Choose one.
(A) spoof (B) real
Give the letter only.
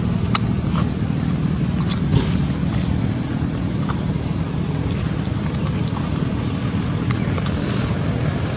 B